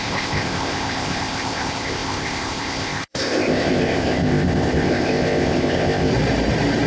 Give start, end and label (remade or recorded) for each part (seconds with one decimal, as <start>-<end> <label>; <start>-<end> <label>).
0.0-6.1 remade; 6.1-6.9 recorded